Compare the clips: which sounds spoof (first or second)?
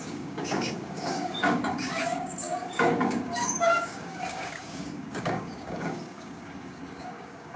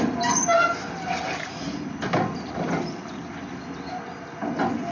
first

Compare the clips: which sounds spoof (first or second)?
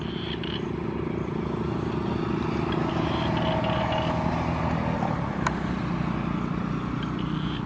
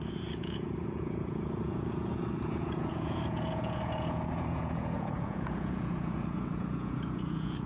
second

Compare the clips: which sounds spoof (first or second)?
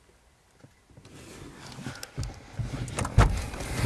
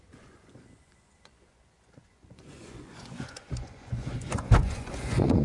second